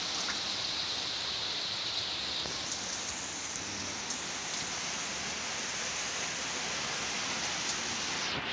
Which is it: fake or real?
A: real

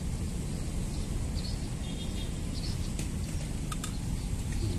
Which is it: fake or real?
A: real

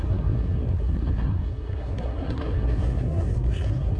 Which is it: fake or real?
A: fake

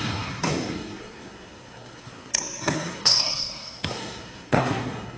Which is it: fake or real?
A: fake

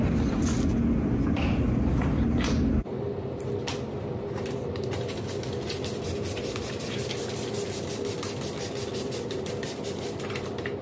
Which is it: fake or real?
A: real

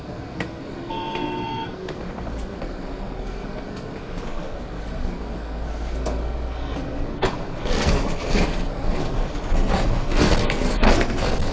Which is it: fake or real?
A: fake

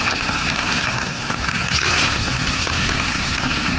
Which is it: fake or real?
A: fake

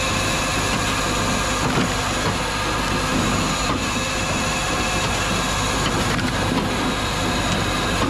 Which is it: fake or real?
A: real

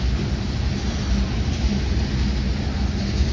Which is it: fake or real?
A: real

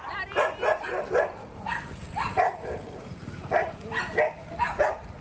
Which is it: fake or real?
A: real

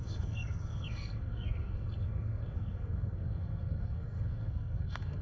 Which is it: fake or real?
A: fake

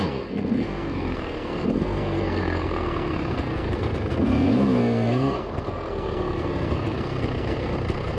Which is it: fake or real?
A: fake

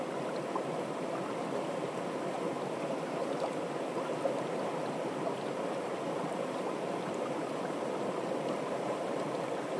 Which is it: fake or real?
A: real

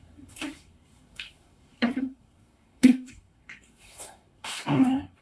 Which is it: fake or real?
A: fake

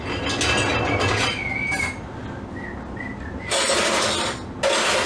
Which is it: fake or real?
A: real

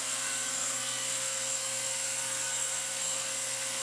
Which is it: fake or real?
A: fake